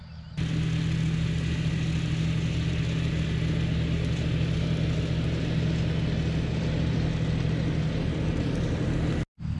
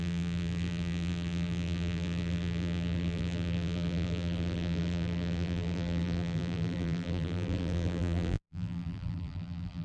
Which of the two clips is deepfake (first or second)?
second